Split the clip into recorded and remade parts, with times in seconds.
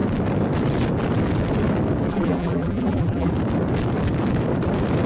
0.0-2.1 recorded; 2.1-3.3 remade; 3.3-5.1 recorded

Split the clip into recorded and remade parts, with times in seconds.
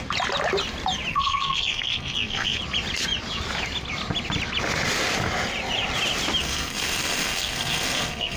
0.0-1.1 recorded; 1.1-2.6 remade; 2.6-6.4 recorded; 6.4-8.4 remade